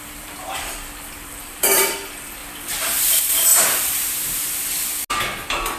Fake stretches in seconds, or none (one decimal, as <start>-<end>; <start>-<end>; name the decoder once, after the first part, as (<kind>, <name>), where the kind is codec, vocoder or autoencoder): 0.0-2.4 (vocoder, BigVGAN v2); 3.0-3.5